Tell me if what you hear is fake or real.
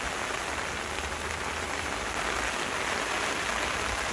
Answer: real